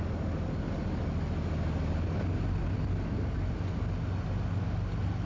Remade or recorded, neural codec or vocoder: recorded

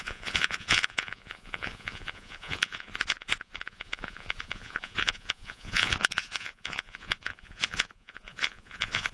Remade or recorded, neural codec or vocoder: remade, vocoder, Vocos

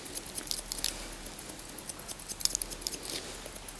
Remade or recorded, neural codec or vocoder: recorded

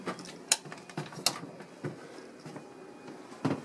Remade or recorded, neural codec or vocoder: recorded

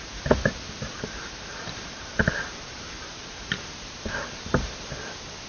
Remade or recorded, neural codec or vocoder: remade, vocoder, BigVGAN v2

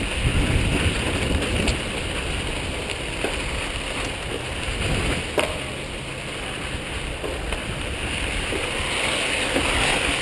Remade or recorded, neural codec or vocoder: recorded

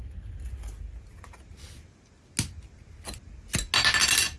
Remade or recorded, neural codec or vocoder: recorded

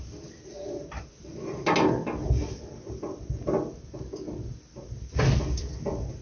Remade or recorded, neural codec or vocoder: recorded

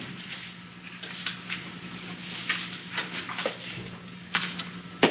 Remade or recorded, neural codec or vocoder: recorded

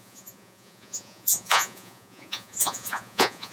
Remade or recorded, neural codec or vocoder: remade, vocoder, Vocos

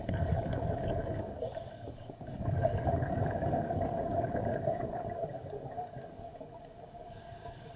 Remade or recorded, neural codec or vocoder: remade, codec, DAC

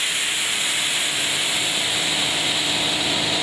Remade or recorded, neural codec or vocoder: recorded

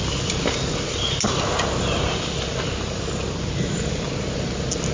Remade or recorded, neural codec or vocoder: recorded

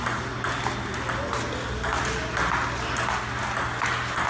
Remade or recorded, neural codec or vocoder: recorded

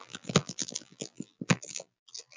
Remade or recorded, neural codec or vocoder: remade, vocoder, BigVGAN v2